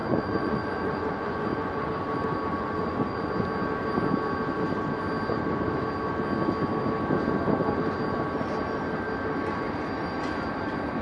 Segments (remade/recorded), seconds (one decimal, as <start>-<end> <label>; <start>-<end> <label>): 0.0-1.9 remade; 1.9-2.5 recorded; 2.5-3.3 remade; 3.3-11.0 recorded